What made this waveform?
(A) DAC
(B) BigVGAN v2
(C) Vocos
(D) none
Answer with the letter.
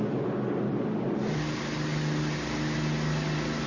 D